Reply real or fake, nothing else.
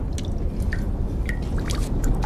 real